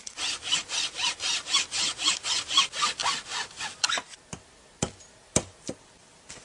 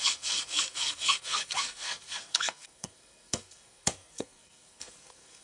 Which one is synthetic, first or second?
second